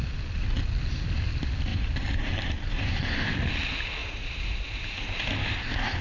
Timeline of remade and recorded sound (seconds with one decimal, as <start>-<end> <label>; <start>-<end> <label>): 0.0-1.7 recorded; 1.7-3.2 remade; 3.2-4.0 recorded; 4.0-5.0 remade; 5.0-6.0 recorded